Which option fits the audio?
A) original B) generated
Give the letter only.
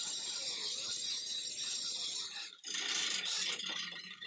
B